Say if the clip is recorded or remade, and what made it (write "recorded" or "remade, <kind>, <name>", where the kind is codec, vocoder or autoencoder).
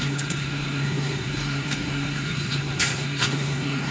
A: remade, codec, SNAC